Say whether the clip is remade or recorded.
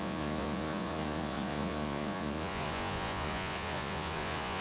remade